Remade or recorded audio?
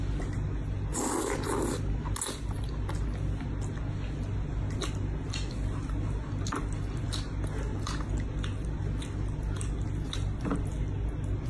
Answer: recorded